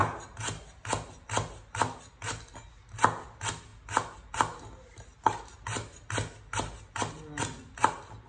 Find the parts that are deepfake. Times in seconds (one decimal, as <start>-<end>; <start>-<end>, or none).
none